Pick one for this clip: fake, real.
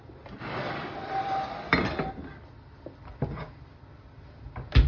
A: real